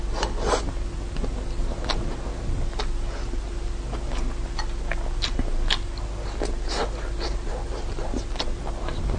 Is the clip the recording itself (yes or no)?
yes